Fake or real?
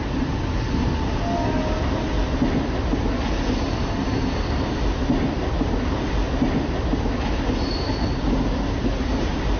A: real